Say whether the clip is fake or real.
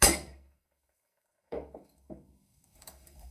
fake